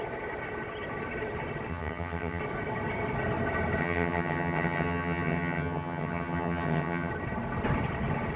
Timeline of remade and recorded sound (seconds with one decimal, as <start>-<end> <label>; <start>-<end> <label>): 0.0-1.7 recorded; 1.7-2.4 remade; 2.4-3.8 recorded; 3.8-7.1 remade; 7.1-8.4 recorded

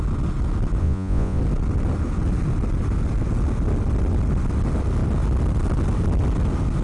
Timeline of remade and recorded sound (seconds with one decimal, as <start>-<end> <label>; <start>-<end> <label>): 0.0-0.8 recorded; 0.8-1.4 remade; 1.4-6.8 recorded

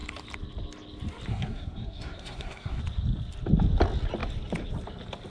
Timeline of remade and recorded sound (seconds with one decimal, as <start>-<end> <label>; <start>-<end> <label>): 0.0-1.3 recorded; 1.3-2.8 remade; 2.8-5.3 recorded

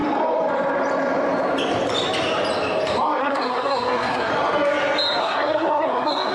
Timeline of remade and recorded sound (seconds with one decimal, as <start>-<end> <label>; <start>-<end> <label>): 0.0-3.2 recorded; 3.2-4.3 remade; 4.3-5.2 recorded; 5.2-6.3 remade